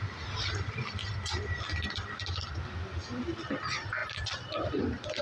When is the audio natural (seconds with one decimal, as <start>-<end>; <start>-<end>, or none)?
0.0-5.2